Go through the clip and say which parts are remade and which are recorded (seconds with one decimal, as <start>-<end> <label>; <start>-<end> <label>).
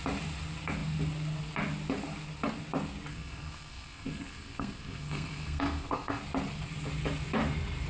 0.0-3.1 recorded; 3.1-6.2 remade; 6.2-7.9 recorded